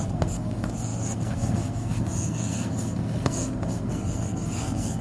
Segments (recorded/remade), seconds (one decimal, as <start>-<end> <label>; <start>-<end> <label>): 0.0-5.0 remade